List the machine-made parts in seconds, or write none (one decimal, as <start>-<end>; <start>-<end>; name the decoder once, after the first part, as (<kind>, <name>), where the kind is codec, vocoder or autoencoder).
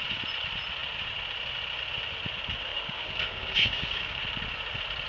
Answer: 2.7-4.2 (codec, DAC)